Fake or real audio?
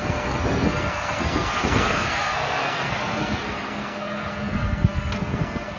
fake